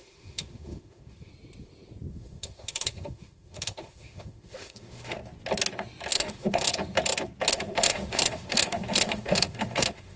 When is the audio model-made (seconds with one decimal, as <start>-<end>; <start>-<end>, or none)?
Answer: 0.0-1.3; 2.1-5.2; 6.1-6.7; 7.5-10.2